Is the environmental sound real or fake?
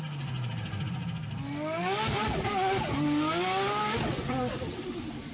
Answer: real